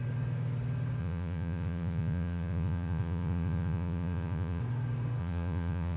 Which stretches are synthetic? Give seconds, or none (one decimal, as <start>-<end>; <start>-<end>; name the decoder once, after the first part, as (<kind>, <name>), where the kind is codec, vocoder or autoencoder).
1.0-4.6 (vocoder, Vocos); 5.2-6.0